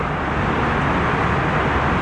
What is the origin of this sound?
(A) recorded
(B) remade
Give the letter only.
A